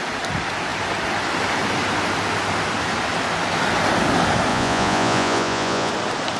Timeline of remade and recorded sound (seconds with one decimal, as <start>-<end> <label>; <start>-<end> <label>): 0.0-4.5 recorded; 4.5-5.9 remade; 5.9-6.4 recorded